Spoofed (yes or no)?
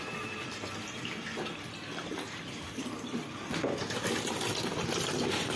no